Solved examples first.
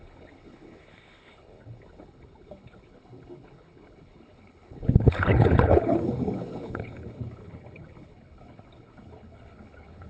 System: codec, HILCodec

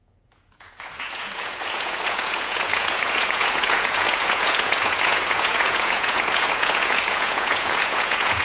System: vocoder, Vocos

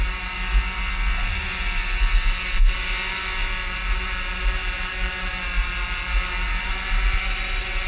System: none